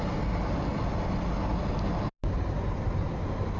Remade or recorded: recorded